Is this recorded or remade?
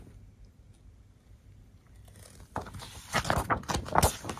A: recorded